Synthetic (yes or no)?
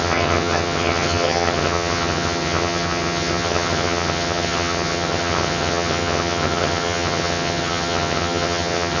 yes